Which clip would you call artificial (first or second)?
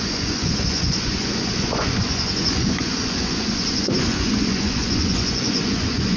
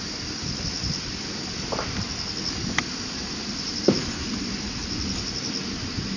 first